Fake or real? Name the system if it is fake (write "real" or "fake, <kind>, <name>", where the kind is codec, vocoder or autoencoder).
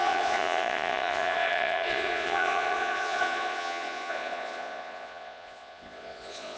fake, vocoder, Vocos